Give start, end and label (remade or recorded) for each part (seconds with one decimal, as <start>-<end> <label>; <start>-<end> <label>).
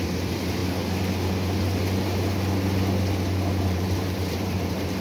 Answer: 0.0-0.6 remade; 0.6-3.6 recorded; 3.6-5.0 remade